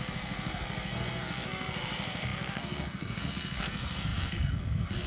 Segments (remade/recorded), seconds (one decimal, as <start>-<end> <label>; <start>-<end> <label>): 0.0-5.1 remade